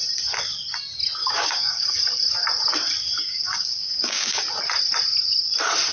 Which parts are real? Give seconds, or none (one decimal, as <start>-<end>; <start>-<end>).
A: 0.0-1.2; 1.9-3.0; 4.4-5.9